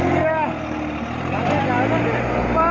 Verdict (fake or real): real